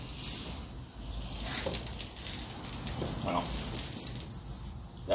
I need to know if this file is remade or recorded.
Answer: recorded